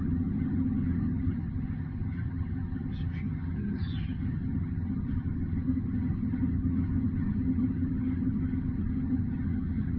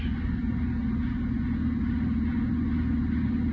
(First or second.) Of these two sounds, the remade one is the first